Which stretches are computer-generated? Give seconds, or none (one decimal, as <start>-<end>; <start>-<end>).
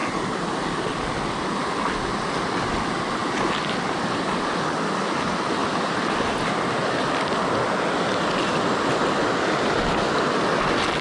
3.2-4.5; 5.6-9.9